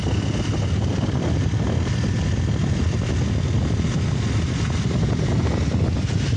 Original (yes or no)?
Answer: yes